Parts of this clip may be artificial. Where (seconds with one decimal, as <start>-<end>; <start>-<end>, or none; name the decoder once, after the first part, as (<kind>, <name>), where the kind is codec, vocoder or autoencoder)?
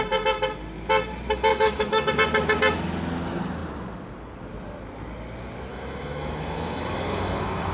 1.5-2.1 (autoencoder, DAC-VAE); 5.7-7.7